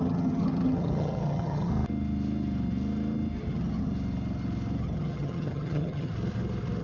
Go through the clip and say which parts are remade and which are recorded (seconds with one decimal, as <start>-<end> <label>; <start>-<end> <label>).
0.0-1.7 remade; 1.7-3.4 recorded; 3.4-3.9 remade; 3.9-4.8 recorded; 4.8-6.1 remade; 6.1-6.8 recorded